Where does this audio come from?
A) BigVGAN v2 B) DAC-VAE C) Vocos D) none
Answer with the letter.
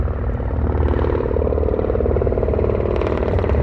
D